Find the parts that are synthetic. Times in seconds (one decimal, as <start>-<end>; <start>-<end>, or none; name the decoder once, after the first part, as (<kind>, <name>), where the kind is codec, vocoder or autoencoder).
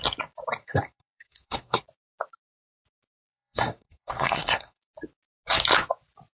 0.6-1.8 (codec, SNAC); 3.2-4.8